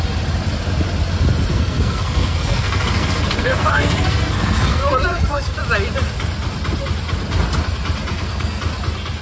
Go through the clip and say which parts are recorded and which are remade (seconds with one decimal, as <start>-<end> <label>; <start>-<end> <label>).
0.0-1.5 recorded; 1.5-5.6 remade; 5.6-8.1 recorded; 8.1-8.6 remade; 8.6-9.2 recorded